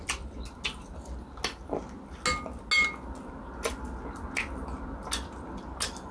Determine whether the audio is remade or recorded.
recorded